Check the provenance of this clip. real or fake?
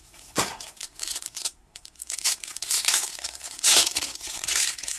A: fake